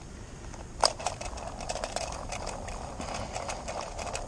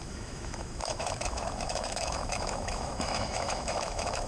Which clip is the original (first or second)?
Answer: first